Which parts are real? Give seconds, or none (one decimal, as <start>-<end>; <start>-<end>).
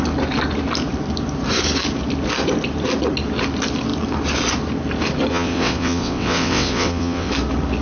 0.0-5.3; 7.3-7.8